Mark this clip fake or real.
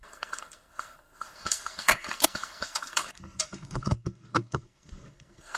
fake